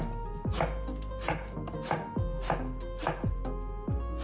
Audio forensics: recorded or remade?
recorded